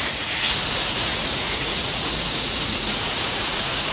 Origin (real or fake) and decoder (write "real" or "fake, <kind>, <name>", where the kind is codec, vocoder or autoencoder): fake, vocoder, Vocos